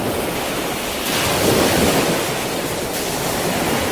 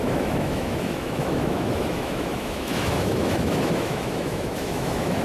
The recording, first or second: first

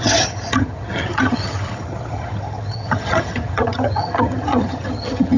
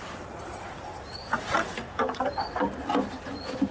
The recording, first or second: second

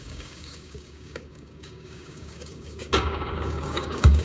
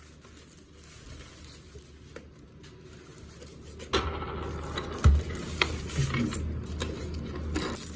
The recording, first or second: second